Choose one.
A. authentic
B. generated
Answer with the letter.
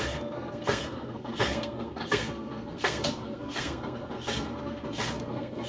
B